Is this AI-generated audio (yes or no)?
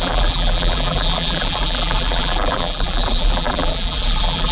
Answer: yes